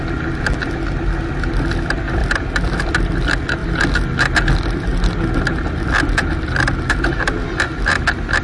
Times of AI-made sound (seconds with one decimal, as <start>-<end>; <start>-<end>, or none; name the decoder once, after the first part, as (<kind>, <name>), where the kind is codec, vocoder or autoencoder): 0.0-2.2 (vocoder, BigVGAN v2); 2.8-3.6; 5.9-8.4